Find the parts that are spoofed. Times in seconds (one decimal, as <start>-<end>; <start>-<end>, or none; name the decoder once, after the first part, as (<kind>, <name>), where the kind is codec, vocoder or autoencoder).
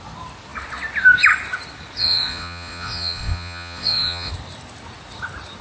2.0-4.3 (vocoder, Vocos)